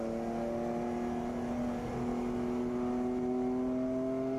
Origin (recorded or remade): recorded